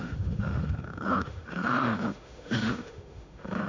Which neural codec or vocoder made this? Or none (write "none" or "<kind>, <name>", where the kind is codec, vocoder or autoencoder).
autoencoder, DAC-VAE